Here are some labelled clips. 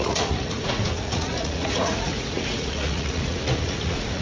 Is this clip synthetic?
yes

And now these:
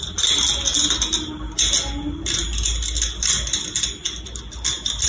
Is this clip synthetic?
no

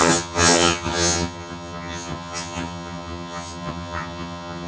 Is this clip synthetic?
yes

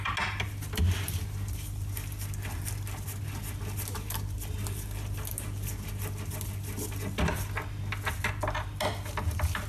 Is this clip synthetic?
no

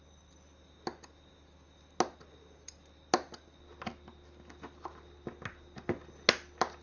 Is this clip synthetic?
no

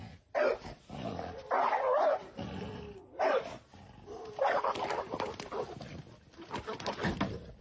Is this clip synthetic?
no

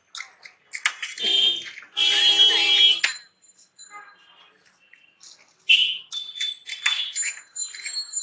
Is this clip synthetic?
no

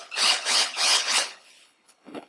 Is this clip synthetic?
yes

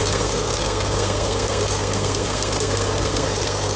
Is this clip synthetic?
yes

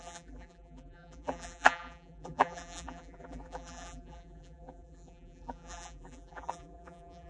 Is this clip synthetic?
yes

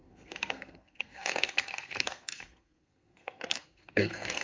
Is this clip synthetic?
yes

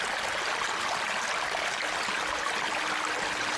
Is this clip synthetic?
no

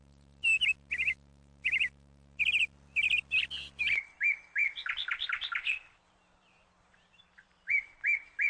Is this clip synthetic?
yes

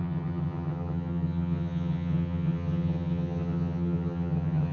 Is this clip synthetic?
yes